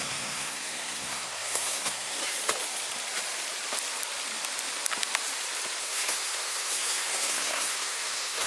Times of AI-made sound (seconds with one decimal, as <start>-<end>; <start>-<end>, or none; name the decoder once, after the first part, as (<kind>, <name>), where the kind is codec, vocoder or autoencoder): 0.0-2.2 (codec, SNAC); 5.8-8.5